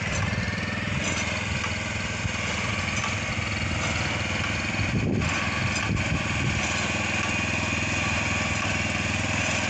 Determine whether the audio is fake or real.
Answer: real